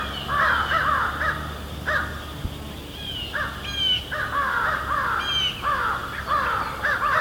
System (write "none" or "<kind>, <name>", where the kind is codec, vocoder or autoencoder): none